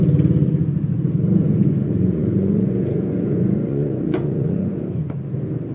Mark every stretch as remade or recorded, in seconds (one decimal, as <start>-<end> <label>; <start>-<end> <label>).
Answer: 0.0-1.6 recorded; 1.6-5.0 remade; 5.0-5.7 recorded